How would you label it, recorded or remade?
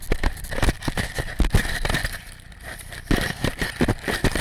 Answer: recorded